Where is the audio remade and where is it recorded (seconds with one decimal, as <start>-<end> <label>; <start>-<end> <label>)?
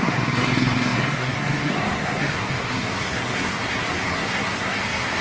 0.0-5.2 remade